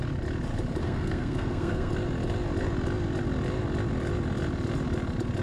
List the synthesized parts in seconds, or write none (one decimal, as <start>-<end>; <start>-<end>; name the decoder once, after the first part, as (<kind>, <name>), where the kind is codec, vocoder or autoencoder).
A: 0.8-1.9 (codec, SNAC)